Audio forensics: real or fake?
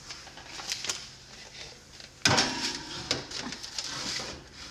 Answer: real